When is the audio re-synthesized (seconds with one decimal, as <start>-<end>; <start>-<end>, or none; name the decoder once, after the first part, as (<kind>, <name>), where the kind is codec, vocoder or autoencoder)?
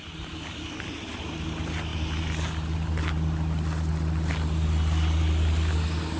none